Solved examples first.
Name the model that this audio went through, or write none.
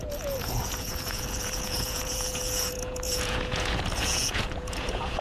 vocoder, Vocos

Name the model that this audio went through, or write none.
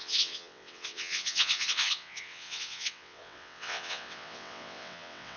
vocoder, WaveNeXt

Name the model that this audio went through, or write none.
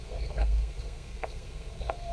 codec, SNAC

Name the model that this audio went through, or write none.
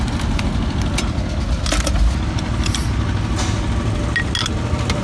none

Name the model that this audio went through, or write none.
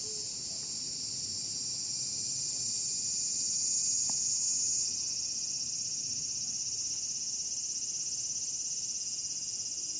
none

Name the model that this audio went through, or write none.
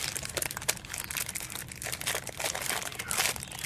none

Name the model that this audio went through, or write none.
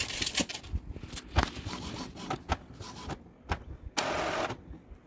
none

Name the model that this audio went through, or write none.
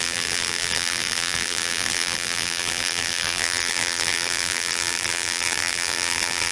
vocoder, BigVGAN v2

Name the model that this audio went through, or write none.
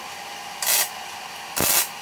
none